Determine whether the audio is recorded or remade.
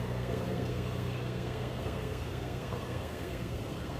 remade